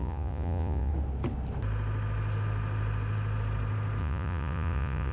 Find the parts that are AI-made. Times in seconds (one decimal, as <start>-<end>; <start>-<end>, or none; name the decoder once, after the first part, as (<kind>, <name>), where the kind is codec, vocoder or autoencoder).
0.0-0.9 (vocoder, Vocos); 4.0-5.1

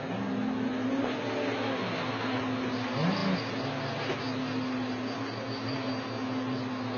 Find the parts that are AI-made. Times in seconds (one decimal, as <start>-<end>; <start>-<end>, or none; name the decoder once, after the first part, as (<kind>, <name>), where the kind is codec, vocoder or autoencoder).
none

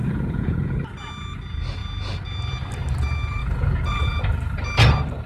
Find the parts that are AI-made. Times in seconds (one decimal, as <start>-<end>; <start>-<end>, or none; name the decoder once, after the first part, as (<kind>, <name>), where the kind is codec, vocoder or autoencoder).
0.0-0.7 (vocoder, Vocos); 3.4-4.2

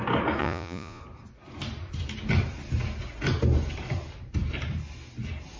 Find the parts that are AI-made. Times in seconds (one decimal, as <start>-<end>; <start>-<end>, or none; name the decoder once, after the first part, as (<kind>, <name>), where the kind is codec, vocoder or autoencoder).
0.4-1.0 (vocoder, Vocos)

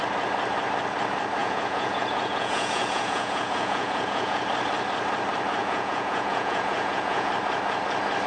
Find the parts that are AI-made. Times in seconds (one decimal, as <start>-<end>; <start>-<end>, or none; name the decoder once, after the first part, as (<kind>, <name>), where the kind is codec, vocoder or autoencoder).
1.4-4.4 (vocoder, Vocos); 5.6-7.3